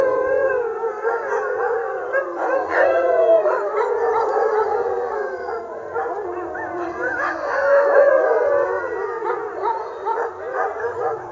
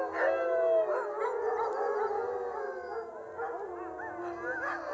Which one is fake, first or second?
first